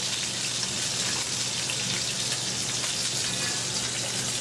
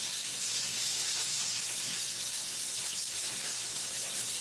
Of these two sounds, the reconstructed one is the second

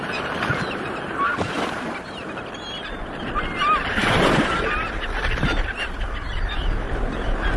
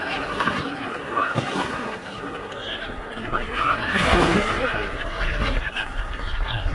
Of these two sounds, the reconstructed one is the second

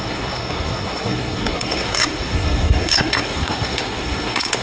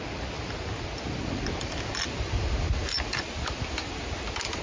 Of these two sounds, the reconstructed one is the first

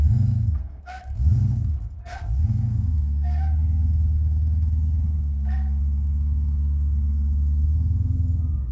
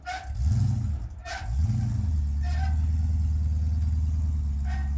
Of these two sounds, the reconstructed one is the first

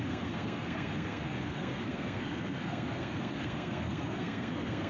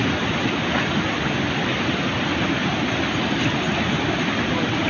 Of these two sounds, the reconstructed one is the first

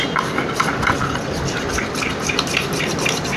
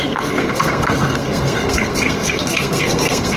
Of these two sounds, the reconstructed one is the second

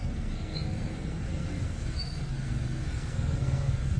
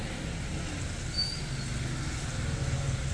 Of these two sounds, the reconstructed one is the first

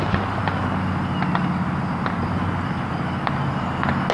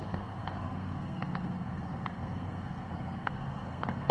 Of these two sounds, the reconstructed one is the second